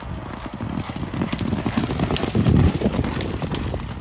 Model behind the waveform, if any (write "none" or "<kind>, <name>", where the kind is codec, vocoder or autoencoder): none